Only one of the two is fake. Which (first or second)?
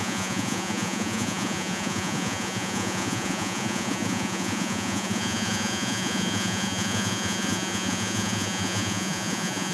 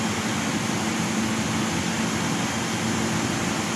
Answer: first